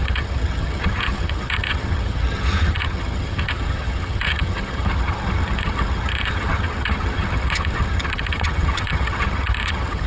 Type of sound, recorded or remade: remade